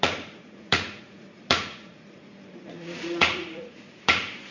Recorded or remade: remade